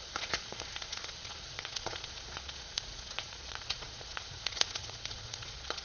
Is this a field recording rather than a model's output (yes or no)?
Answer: no